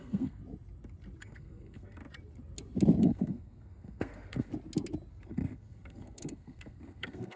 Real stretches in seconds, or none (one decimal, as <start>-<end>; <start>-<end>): 0.4-1.2; 2.0-3.0; 4.5-5.1